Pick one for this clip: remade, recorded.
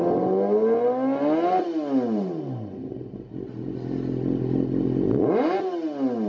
recorded